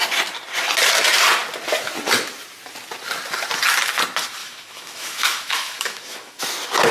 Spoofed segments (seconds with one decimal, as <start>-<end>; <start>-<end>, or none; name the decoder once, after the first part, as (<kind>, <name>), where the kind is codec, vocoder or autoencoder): 4.4-6.4 (autoencoder, DAC-VAE)